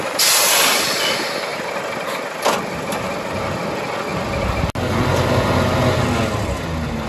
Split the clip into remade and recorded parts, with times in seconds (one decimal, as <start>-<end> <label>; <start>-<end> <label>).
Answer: 0.0-7.1 recorded